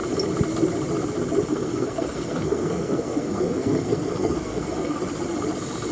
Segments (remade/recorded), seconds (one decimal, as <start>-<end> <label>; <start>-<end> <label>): 0.0-1.5 recorded; 1.5-5.0 remade; 5.0-5.9 recorded

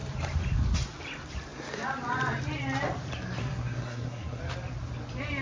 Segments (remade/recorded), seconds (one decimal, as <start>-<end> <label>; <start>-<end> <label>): 0.0-3.4 recorded; 3.4-4.4 remade; 4.4-5.4 recorded

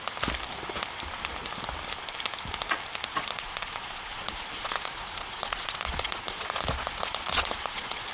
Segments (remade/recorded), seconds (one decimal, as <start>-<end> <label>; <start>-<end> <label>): 0.0-3.1 recorded; 3.1-8.1 remade